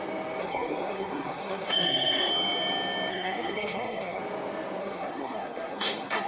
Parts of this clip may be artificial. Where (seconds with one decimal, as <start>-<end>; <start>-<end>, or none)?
0.4-2.3; 3.1-4.2; 4.8-6.3